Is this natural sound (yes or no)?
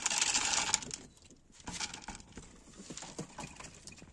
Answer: yes